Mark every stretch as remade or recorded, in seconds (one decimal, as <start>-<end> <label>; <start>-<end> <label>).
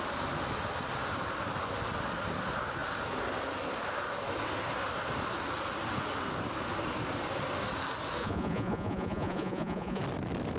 0.0-8.2 recorded; 8.2-10.0 remade; 10.0-10.6 recorded